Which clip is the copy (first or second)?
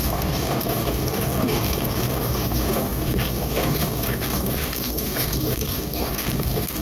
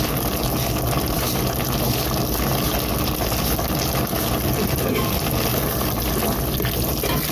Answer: first